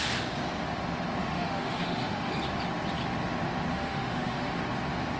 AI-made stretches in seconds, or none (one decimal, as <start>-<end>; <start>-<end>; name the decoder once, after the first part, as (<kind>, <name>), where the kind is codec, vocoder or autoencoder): 1.2-2.3 (autoencoder, DAC-VAE); 3.7-4.6